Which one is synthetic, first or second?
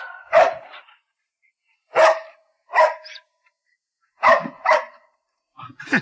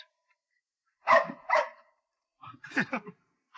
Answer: second